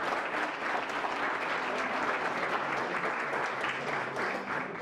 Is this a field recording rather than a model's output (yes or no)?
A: yes